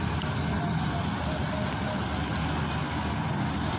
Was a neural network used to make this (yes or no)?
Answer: no